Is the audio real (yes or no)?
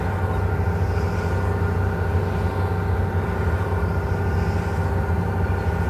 yes